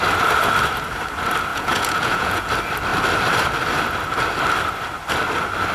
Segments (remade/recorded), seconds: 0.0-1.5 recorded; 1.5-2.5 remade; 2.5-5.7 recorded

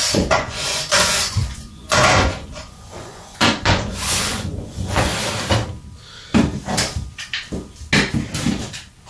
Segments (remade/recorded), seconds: 0.0-5.1 remade; 5.1-9.1 recorded

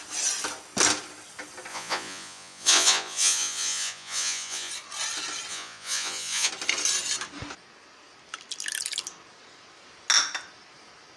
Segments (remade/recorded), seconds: 0.0-1.7 recorded; 1.7-4.7 remade; 4.7-5.5 recorded; 5.5-6.5 remade; 6.5-11.2 recorded

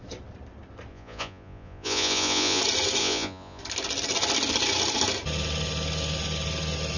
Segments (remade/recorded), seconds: 0.0-0.9 recorded; 0.9-2.6 remade; 2.6-3.0 recorded; 3.0-3.6 remade; 3.6-7.0 recorded